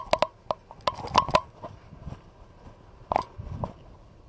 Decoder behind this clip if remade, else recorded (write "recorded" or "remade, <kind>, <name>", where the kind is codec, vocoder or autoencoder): recorded